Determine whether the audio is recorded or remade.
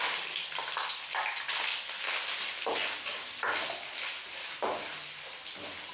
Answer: recorded